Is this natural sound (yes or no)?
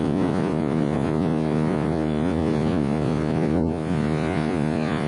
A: no